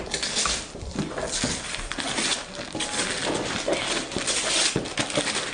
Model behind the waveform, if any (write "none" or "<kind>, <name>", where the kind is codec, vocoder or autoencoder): none